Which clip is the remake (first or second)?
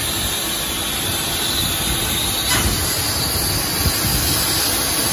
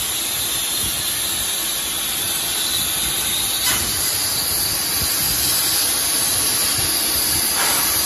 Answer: second